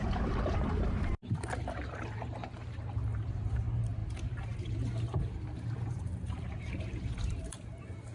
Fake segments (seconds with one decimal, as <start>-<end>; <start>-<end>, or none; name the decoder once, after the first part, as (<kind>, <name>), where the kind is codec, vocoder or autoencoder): 0.0-8.1 (vocoder, BigVGAN v2)